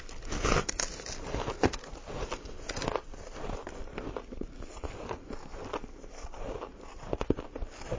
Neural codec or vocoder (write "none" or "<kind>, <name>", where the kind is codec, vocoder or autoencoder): none